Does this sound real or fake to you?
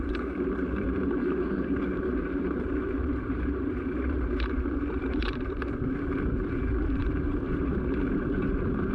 fake